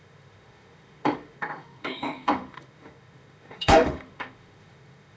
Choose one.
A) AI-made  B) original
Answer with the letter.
A